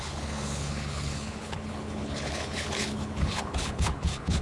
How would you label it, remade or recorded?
remade